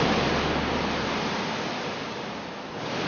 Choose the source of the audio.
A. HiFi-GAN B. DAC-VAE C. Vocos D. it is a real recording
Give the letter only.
D